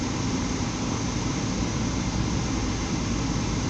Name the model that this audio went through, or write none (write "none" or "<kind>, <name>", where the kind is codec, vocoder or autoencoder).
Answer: none